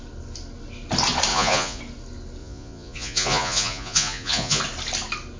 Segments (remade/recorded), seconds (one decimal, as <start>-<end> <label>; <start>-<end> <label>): 0.0-1.3 recorded; 1.3-1.8 remade; 1.8-2.4 recorded; 2.4-4.6 remade; 4.6-5.4 recorded